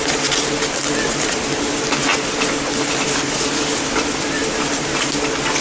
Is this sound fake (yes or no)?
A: no